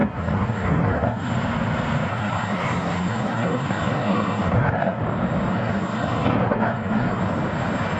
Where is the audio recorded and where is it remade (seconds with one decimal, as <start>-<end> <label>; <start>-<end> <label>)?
0.0-1.3 remade; 1.3-2.1 recorded; 2.1-5.0 remade; 5.0-5.5 recorded; 5.5-7.2 remade; 7.2-8.0 recorded